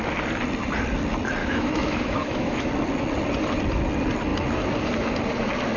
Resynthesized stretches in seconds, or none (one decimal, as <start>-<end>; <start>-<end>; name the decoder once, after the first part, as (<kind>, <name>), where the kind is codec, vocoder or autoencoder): 1.4-2.7 (autoencoder, DAC-VAE)